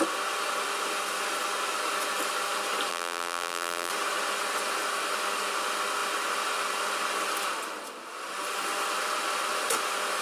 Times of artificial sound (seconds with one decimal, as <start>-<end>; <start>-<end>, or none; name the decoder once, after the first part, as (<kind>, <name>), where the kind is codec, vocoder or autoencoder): 2.9-3.9 (vocoder, BigVGAN v2)